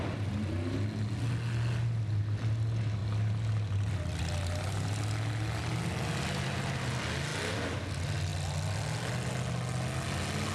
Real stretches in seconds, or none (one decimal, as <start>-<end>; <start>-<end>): 0.0-10.5